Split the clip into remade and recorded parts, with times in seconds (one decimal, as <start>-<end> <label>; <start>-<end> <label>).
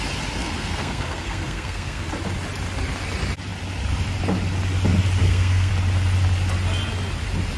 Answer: 0.0-0.4 recorded; 0.4-2.1 remade; 2.1-5.2 recorded; 5.2-5.7 remade; 5.7-7.6 recorded